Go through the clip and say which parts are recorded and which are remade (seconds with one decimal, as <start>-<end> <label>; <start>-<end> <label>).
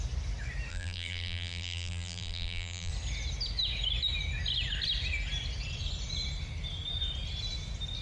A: 0.0-0.7 recorded; 0.7-2.9 remade; 2.9-8.0 recorded